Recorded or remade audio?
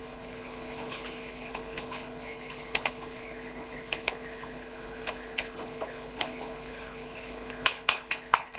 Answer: remade